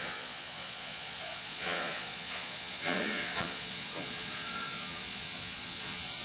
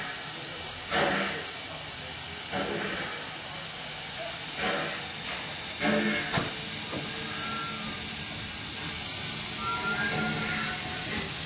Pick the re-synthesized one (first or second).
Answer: first